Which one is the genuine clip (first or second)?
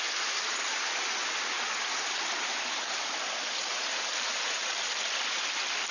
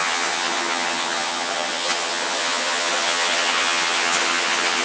first